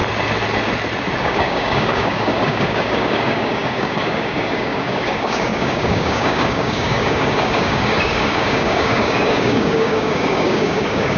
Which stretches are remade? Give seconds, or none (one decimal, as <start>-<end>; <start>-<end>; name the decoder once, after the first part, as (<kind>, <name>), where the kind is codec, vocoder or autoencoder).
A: 1.2-11.2 (codec, DAC)

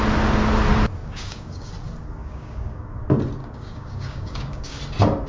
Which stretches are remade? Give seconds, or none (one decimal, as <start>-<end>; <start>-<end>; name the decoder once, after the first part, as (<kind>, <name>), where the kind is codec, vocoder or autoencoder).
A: 1.0-1.7 (codec, DAC); 2.2-2.9; 3.4-4.8

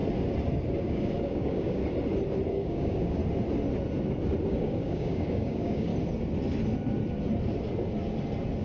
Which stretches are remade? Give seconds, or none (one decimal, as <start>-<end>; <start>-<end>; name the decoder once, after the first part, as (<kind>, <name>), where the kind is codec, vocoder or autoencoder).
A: 0.8-1.8 (codec, DAC); 2.5-3.2; 4.5-5.9

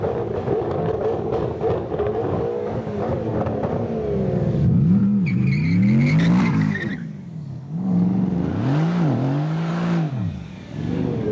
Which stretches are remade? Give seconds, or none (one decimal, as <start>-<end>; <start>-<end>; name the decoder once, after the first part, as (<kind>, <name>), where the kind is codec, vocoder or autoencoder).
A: 0.0-3.3 (codec, DAC); 4.5-5.0; 6.3-11.3

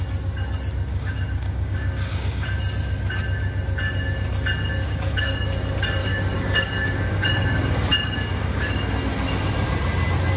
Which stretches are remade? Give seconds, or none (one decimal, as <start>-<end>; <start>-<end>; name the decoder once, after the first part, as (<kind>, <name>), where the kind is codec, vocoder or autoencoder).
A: 0.9-2.6 (codec, DAC); 4.8-5.5; 6.0-8.9

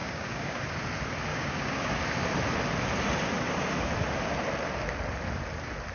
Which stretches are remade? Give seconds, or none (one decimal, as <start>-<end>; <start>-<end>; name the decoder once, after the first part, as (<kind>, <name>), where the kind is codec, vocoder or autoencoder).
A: 0.0-0.6 (codec, DAC); 1.3-1.9

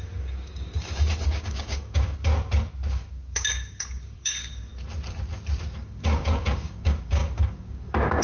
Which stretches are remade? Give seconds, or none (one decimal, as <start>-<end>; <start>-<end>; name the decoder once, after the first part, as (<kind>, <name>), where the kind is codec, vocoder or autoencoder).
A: 0.0-2.3 (codec, DAC); 2.9-4.7; 5.8-8.2

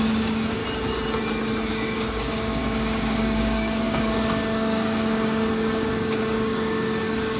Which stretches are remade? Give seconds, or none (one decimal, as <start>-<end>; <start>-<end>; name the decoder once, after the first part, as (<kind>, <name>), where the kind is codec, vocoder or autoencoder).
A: 0.0-0.6 (codec, DAC); 1.7-7.4